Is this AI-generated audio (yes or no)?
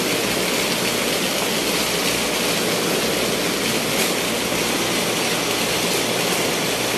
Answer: no